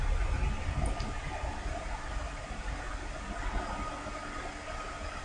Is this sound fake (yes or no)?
no